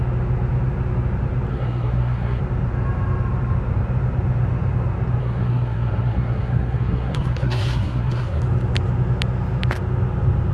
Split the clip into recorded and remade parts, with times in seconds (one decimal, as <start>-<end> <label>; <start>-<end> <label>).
0.0-1.5 recorded; 1.5-2.4 remade; 2.4-5.2 recorded; 5.2-8.4 remade; 8.4-10.5 recorded